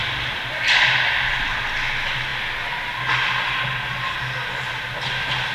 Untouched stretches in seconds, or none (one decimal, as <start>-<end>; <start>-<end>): 0.0-5.5